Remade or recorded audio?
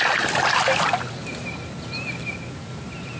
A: recorded